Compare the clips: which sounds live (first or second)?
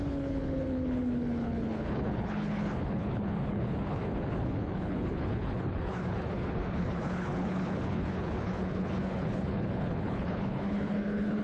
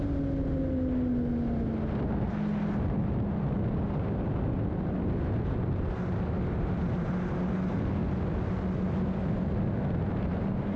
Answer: second